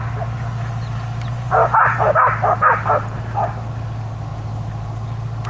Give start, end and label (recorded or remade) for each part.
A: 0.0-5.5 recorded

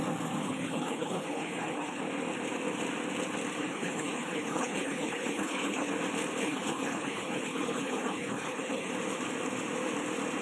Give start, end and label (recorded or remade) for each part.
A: 0.0-0.4 recorded; 0.4-2.0 remade; 2.0-3.6 recorded; 3.6-5.9 remade; 5.9-6.4 recorded; 6.4-8.9 remade; 8.9-10.4 recorded

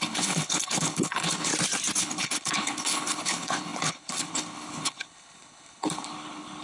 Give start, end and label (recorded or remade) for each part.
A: 0.0-1.5 remade; 1.5-2.0 recorded; 2.0-6.6 remade

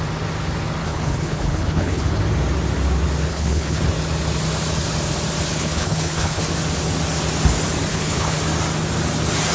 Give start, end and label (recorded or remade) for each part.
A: 0.0-0.8 recorded; 0.8-2.2 remade; 2.2-3.3 recorded; 3.3-3.8 remade; 3.8-5.5 recorded; 5.5-6.4 remade; 6.4-7.9 recorded; 7.9-8.4 remade; 8.4-9.5 recorded

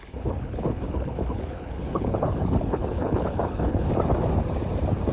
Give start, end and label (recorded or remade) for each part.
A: 0.0-3.9 remade; 3.9-5.1 recorded

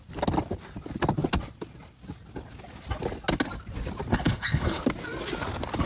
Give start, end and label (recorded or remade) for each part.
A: 0.0-4.1 recorded; 4.1-4.8 remade; 4.8-5.9 recorded

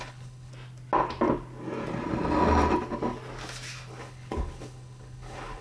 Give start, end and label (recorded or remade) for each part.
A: 0.0-0.5 remade; 0.5-3.9 recorded; 3.9-5.6 remade